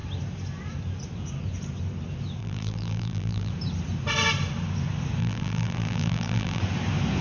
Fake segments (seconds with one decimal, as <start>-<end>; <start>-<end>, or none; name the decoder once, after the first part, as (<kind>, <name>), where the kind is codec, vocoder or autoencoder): 2.4-3.5 (vocoder, BigVGAN v2); 5.2-6.6